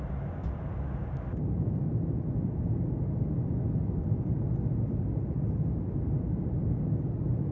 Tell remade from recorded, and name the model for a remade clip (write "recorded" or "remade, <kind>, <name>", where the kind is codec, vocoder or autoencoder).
recorded